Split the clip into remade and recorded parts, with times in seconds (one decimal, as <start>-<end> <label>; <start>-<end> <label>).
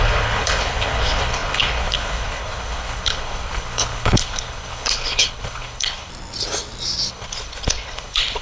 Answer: 0.0-6.1 remade; 6.1-7.1 recorded; 7.1-8.4 remade